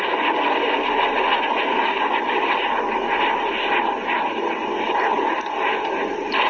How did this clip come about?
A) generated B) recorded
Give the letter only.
B